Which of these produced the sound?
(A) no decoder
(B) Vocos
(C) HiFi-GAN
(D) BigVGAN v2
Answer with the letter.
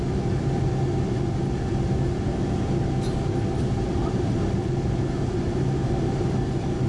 A